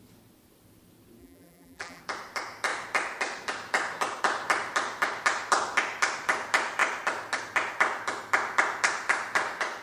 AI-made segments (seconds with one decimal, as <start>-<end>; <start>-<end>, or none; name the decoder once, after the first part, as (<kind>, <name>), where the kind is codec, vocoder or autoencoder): 1.2-2.0 (vocoder, BigVGAN v2)